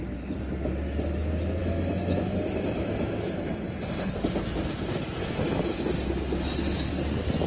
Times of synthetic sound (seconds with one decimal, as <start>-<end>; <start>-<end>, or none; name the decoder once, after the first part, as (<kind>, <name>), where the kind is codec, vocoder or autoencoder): 1.6-4.1 (autoencoder, DAC-VAE); 5.2-5.8